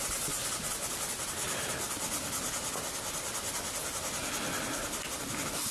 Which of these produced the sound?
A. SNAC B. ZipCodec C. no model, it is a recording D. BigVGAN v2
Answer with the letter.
C